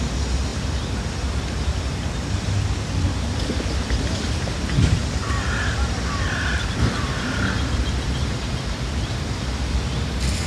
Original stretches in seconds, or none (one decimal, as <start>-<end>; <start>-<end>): 0.0-0.5; 2.2-5.0; 10.1-10.5